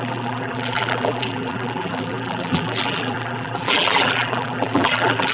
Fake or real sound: fake